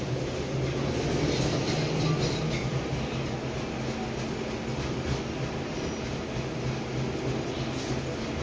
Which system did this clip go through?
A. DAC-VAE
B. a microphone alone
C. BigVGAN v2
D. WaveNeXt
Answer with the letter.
B